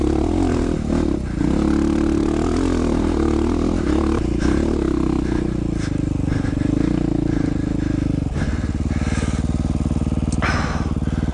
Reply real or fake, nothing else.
real